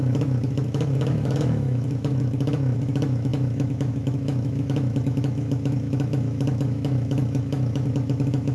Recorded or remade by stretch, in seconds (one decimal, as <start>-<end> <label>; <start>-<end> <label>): 0.0-8.5 remade